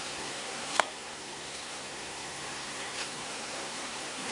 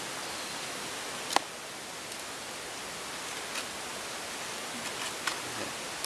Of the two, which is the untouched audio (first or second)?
second